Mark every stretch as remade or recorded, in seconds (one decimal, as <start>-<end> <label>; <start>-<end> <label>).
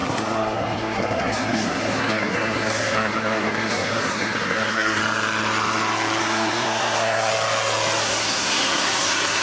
0.0-5.0 remade; 5.0-6.2 recorded; 6.2-7.3 remade; 7.3-8.0 recorded; 8.0-9.4 remade